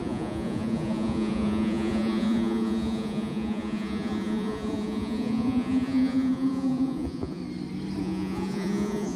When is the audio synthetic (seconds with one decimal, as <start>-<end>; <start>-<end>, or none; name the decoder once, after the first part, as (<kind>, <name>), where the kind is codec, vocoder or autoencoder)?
0.0-7.4 (vocoder, Vocos); 8.0-9.2